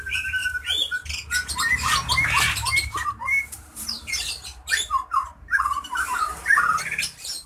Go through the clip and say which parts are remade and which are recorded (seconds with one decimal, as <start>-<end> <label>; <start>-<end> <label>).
0.0-0.4 remade; 0.4-2.1 recorded; 2.1-7.5 remade